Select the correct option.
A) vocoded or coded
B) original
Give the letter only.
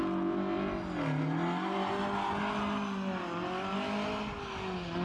B